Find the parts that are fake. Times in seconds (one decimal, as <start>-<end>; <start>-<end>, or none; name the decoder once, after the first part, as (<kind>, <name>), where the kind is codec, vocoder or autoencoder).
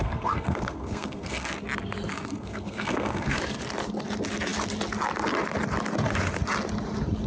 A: 0.0-1.6 (codec, SNAC); 2.1-3.4